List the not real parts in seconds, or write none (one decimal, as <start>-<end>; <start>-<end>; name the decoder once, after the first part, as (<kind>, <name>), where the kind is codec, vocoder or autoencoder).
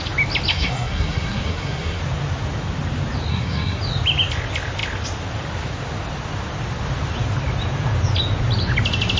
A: 0.5-2.0 (codec, SNAC); 3.3-3.8